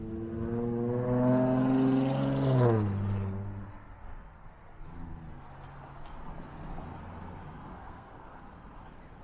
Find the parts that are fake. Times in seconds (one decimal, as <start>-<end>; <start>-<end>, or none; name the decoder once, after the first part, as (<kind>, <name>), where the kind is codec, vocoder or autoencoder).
7.7-8.4 (codec, SNAC)